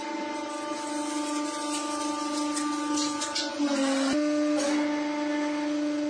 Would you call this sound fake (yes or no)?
no